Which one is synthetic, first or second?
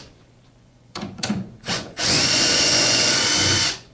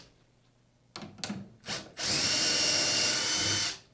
first